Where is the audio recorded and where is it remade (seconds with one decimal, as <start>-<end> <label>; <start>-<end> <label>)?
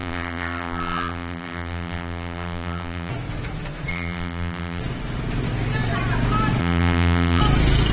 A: 0.0-3.1 remade; 3.1-3.9 recorded; 3.9-4.8 remade; 4.8-6.6 recorded; 6.6-7.4 remade; 7.4-7.9 recorded